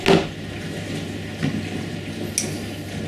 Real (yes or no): yes